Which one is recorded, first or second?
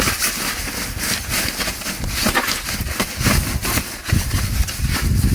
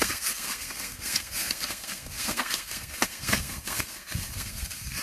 first